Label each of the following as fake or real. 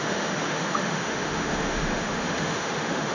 fake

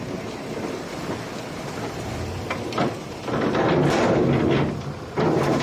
real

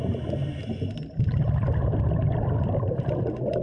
real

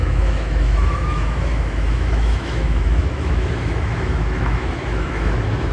fake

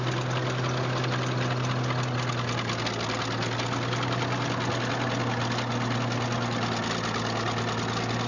real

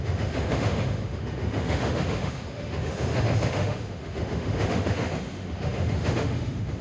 fake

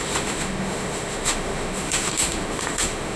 fake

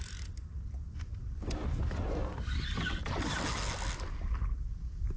real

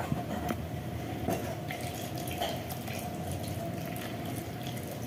real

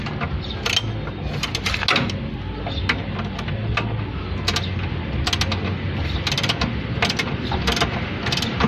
real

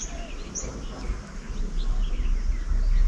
real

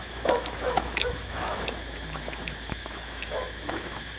fake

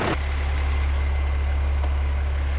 real